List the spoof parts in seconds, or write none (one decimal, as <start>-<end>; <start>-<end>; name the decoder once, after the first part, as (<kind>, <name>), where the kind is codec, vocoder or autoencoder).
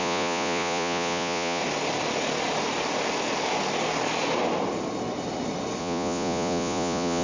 0.0-1.6 (vocoder, Vocos); 5.8-7.2